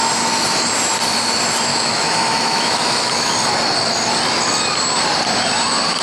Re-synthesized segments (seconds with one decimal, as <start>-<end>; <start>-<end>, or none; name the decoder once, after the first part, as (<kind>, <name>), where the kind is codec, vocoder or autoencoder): 1.7-3.3 (autoencoder, DAC-VAE)